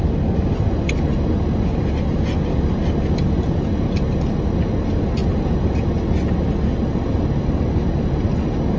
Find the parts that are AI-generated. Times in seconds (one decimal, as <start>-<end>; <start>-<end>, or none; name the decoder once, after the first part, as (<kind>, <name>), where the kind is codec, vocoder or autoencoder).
none